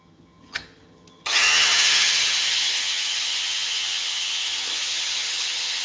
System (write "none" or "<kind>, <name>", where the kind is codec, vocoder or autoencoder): vocoder, HiFi-GAN